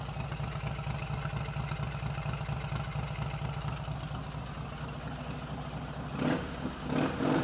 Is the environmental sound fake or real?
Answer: real